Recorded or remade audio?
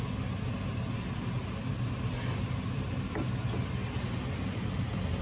recorded